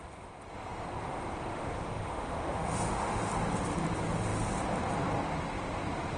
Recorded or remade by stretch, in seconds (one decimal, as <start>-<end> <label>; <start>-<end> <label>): 0.0-1.5 recorded; 1.5-3.3 remade; 3.3-6.2 recorded